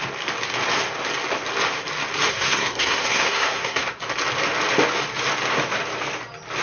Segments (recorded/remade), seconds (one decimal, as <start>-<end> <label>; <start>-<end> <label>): 0.0-2.3 recorded; 2.3-4.0 remade; 4.0-6.6 recorded